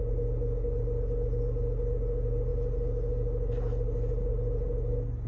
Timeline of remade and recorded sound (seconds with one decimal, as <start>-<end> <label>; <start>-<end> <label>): 0.0-5.3 recorded